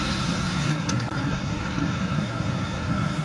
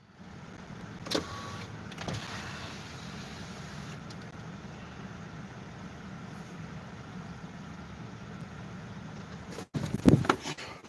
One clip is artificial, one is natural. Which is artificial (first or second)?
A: first